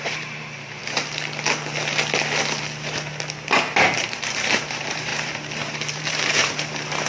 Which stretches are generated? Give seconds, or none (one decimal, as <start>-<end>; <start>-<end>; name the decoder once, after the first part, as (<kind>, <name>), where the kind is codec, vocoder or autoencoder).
0.0-0.8 (vocoder, BigVGAN v2); 3.9-7.1